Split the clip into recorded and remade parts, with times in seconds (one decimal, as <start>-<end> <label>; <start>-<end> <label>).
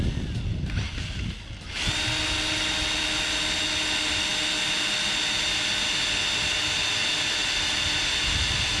0.0-8.8 recorded